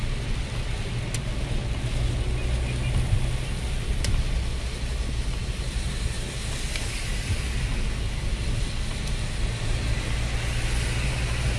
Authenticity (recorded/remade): recorded